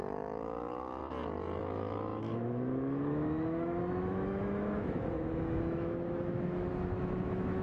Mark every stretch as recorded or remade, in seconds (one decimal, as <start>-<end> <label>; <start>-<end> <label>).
0.0-1.0 remade; 1.0-1.6 recorded; 1.6-7.6 remade